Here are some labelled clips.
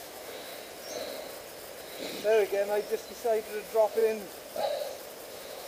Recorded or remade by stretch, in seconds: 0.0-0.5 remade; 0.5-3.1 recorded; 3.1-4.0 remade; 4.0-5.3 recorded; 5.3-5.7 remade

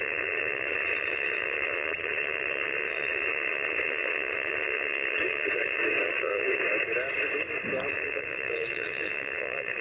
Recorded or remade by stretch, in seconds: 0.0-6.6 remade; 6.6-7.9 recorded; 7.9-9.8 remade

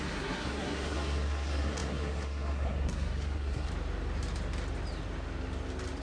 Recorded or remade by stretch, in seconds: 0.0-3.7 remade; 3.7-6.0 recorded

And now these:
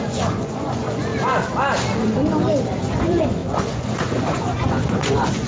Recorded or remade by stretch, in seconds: 0.0-1.1 remade; 1.1-2.8 recorded; 2.8-5.5 remade